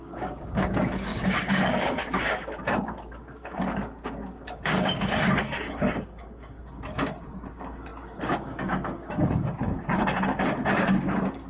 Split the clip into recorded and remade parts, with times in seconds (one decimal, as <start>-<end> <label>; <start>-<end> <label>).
0.0-11.5 remade